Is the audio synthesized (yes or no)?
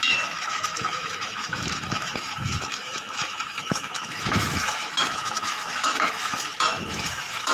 yes